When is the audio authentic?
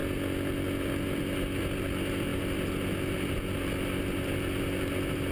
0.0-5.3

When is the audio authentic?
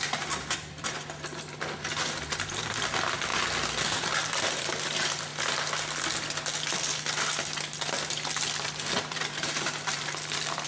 3.3-3.8; 5.3-8.3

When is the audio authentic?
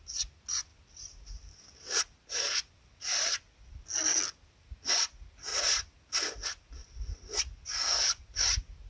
0.0-8.9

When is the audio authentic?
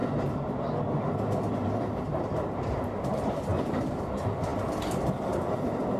0.0-4.5; 5.2-6.0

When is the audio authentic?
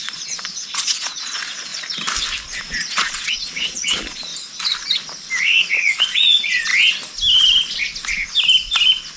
1.7-2.6; 4.3-5.4; 6.7-9.2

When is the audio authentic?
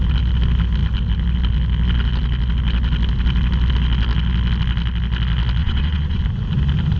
0.0-5.6; 6.2-7.0